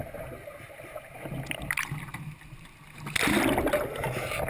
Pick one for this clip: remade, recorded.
recorded